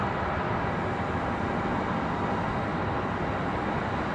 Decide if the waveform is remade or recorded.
recorded